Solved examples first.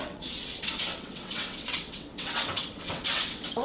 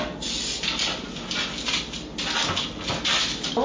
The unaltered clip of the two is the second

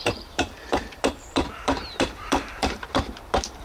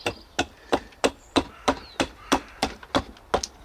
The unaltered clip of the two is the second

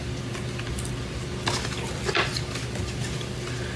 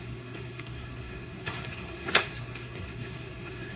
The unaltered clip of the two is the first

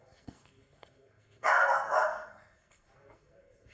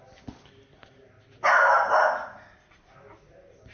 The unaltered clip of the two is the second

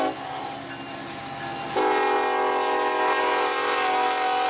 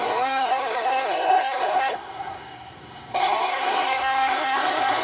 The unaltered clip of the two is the first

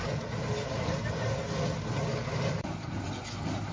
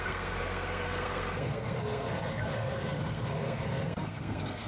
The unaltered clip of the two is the first